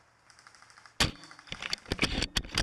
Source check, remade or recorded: recorded